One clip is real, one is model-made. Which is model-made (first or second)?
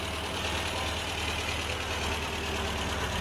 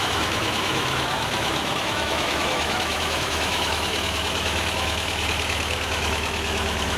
second